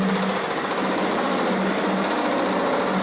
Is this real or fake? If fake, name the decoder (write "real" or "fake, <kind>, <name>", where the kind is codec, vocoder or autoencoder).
real